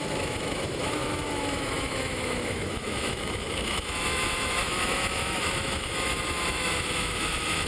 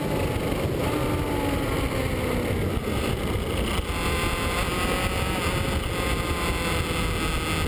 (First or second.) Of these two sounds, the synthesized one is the first